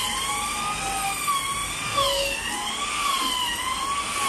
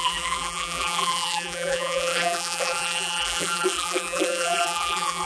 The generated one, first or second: second